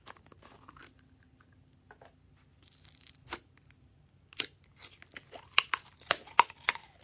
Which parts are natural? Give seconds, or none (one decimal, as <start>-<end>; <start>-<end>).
0.0-7.0